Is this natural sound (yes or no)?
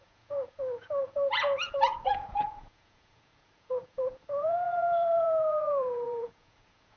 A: no